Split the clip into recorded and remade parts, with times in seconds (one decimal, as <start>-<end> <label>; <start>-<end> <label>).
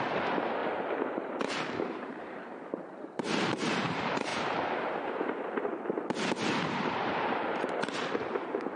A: 0.0-0.6 remade; 0.6-1.8 recorded; 1.8-5.9 remade; 5.9-6.6 recorded; 6.6-8.8 remade